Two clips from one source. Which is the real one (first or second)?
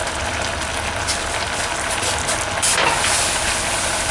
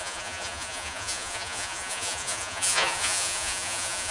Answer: first